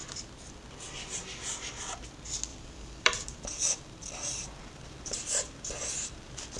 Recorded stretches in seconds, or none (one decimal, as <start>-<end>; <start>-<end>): 0.0-2.5